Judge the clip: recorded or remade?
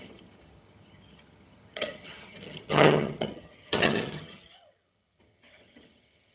remade